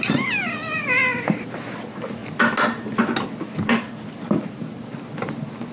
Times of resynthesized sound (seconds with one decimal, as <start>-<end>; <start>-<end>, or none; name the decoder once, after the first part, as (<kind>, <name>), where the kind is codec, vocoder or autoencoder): none